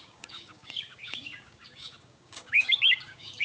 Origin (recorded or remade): remade